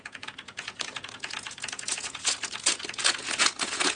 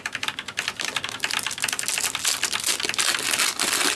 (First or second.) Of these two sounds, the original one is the second